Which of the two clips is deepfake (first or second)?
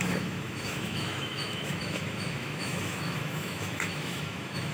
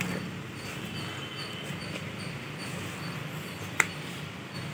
first